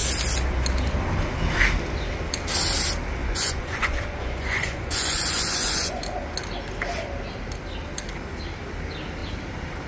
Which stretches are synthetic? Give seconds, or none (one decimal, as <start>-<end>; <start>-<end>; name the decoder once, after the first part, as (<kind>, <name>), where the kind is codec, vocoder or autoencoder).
3.2-6.0 (vocoder, Vocos)